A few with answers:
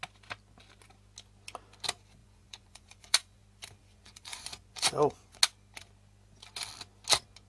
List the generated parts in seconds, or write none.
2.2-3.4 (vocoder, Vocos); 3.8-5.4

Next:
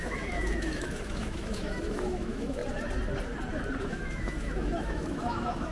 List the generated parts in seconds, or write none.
0.0-2.6 (autoencoder, DAC-VAE); 3.8-5.7

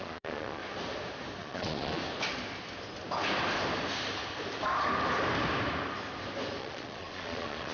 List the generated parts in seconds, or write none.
0.0-0.6 (vocoder, Vocos); 1.4-2.0; 6.6-7.7

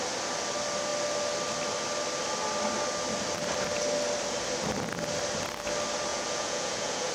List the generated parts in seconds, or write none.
6.1-7.1 (vocoder, Vocos)

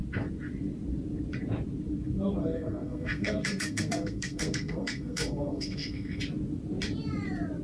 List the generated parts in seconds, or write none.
2.4-6.2 (codec, SNAC)